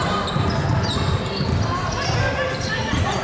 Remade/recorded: recorded